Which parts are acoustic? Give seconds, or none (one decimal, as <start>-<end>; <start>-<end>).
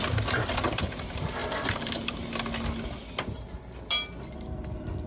0.0-1.4; 2.2-5.1